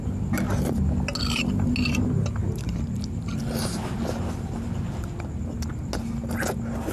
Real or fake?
real